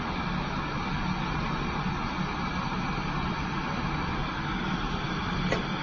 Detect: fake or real real